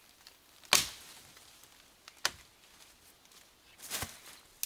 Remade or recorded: recorded